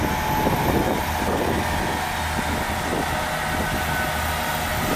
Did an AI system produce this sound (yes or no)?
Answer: no